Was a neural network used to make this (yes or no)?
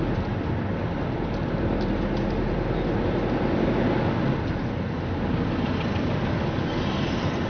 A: no